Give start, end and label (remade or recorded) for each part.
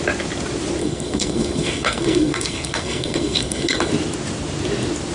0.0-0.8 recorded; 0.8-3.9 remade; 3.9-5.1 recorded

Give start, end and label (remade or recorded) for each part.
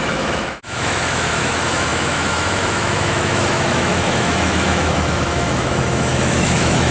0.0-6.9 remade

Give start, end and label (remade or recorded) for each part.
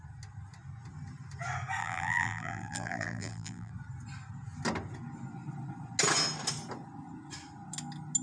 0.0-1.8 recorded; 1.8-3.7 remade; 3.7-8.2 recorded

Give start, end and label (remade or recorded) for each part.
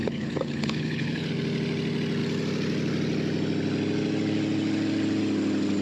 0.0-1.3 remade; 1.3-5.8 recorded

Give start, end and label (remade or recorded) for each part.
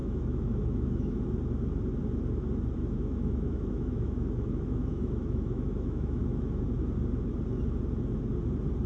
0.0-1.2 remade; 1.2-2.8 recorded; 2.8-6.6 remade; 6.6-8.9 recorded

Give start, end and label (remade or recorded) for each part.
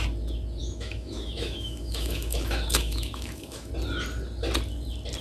0.0-0.6 recorded; 0.6-3.7 remade; 3.7-5.2 recorded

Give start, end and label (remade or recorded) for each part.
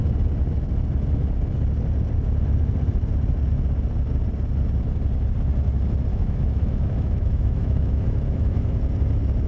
0.0-6.1 recorded; 6.1-8.8 remade; 8.8-9.5 recorded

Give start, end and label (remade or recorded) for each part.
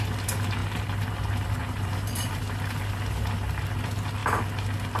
0.0-1.6 recorded; 1.6-2.4 remade; 2.4-5.0 recorded